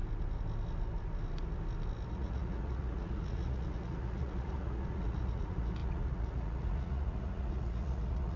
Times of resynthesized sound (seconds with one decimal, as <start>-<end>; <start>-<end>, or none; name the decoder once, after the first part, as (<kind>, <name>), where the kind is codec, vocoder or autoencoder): 2.1-8.4 (vocoder, Vocos)